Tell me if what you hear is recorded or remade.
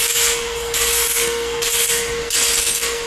remade